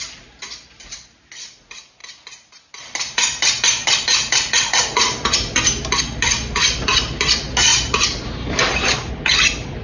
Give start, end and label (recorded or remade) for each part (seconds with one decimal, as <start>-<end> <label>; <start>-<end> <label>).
0.0-7.7 recorded; 7.7-9.1 remade; 9.1-9.8 recorded